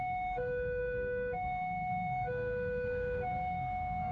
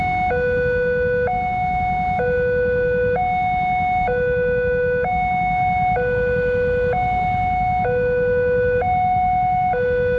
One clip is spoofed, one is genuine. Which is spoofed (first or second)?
first